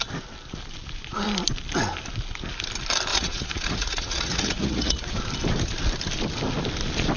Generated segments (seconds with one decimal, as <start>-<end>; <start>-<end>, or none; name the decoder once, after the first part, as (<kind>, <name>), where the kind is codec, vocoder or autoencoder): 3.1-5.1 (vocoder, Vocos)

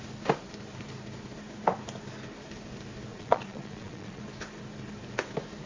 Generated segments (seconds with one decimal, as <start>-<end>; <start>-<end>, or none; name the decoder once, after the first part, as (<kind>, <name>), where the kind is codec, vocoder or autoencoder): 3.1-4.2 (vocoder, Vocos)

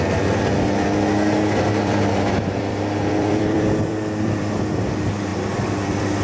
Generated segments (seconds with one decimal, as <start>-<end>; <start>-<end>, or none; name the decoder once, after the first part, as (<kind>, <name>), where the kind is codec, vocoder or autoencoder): 1.7-4.5 (vocoder, BigVGAN v2); 5.3-6.2

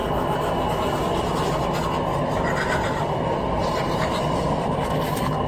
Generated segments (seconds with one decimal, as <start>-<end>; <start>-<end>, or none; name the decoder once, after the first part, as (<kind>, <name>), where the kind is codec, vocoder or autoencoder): 2.1-4.2 (vocoder, BigVGAN v2)

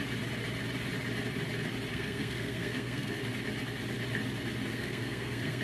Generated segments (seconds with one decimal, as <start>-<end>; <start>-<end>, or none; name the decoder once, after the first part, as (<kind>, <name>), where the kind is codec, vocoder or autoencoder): 1.9-3.2 (codec, SNAC); 4.7-5.6

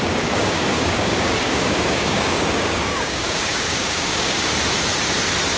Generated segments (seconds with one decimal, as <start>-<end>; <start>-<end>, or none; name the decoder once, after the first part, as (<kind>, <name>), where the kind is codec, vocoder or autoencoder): 0.0-4.6 (codec, DAC)

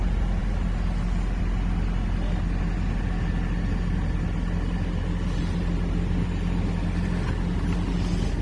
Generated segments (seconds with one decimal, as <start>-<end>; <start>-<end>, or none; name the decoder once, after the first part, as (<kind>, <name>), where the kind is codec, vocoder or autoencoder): none